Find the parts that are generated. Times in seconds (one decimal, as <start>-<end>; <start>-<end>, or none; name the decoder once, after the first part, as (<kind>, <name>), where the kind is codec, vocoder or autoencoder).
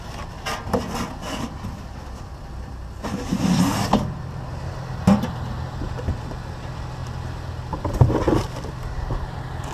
none